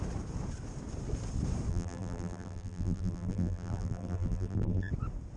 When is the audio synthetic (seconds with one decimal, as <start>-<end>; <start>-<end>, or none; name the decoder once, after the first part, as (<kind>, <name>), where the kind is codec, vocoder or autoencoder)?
1.7-4.9 (vocoder, BigVGAN v2)